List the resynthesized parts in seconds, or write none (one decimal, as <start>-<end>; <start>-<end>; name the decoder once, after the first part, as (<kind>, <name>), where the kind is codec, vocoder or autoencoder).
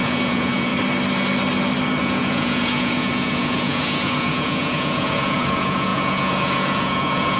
0.0-0.7 (vocoder, Vocos); 2.0-7.4